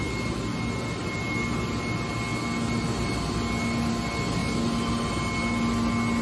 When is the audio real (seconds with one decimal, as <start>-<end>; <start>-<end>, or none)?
0.0-6.2